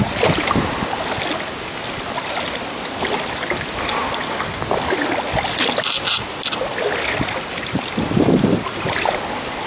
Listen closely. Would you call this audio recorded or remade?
recorded